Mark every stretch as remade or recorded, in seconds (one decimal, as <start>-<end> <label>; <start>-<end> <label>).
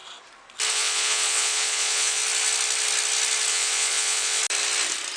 0.0-0.7 recorded; 0.7-2.2 remade; 2.2-3.5 recorded; 3.5-4.4 remade; 4.4-5.2 recorded